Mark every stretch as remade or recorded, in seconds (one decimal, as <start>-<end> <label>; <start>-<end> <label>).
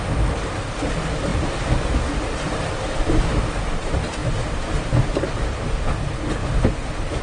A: 0.0-7.2 recorded